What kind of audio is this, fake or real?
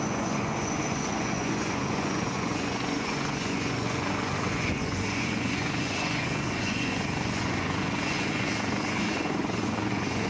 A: fake